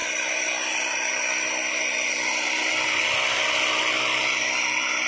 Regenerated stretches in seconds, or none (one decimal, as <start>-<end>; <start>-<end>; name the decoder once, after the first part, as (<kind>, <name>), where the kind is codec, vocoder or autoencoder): none